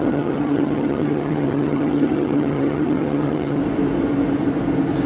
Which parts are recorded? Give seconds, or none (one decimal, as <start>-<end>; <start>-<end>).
3.6-5.1